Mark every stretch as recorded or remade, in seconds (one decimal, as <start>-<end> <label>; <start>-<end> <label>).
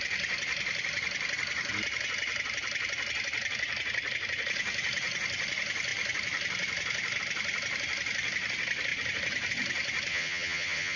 0.0-10.1 recorded; 10.1-11.0 remade